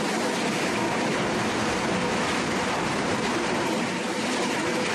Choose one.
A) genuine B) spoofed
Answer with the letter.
A